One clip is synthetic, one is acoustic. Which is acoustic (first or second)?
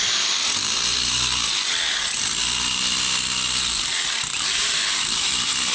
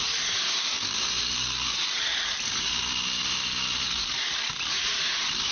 first